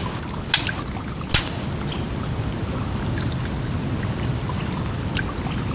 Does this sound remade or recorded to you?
recorded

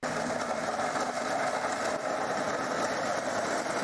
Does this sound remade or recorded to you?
recorded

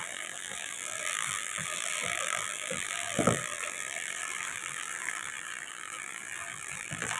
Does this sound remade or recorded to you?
remade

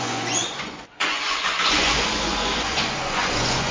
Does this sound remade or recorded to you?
remade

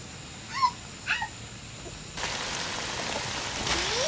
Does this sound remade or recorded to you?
recorded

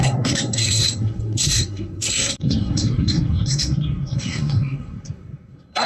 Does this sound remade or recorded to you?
remade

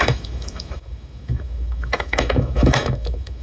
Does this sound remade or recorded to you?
remade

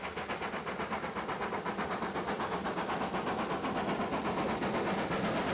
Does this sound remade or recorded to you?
recorded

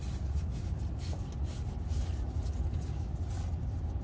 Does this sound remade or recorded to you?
recorded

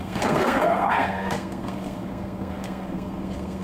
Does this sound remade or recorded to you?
remade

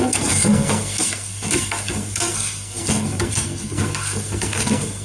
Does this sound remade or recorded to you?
remade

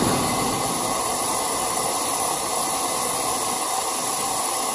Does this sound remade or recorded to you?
recorded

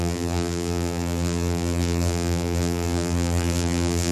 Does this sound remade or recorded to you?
remade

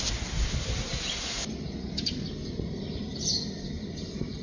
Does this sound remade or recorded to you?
recorded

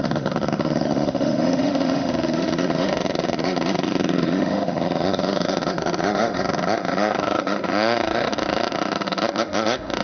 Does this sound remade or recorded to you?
remade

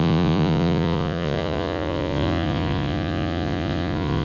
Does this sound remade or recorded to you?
remade